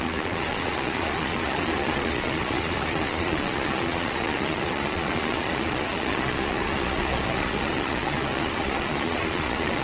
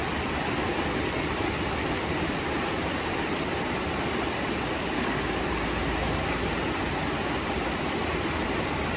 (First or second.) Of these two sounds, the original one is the second